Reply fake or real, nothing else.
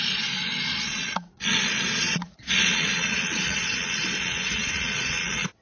fake